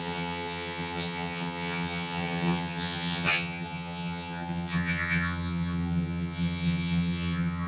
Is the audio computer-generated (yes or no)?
yes